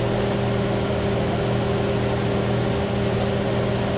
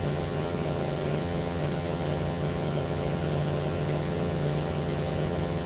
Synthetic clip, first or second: second